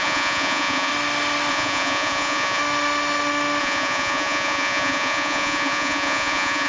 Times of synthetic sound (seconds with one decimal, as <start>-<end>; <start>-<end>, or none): 0.0-0.9; 1.5-2.6; 3.6-6.7